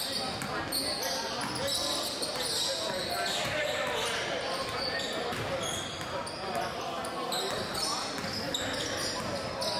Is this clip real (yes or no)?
yes